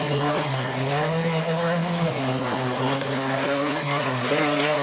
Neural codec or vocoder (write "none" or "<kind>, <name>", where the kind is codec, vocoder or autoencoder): codec, SNAC